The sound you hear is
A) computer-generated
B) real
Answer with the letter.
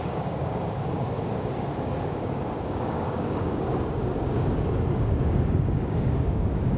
A